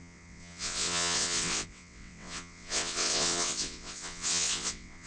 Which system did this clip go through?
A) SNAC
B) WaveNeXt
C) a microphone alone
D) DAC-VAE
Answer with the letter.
B